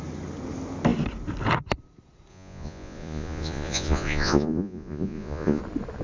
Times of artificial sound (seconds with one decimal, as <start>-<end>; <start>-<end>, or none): 2.3-5.6